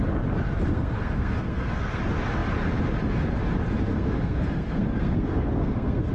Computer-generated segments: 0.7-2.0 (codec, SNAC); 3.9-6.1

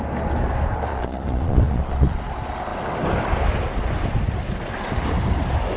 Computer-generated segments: 0.9-2.2 (vocoder, Vocos)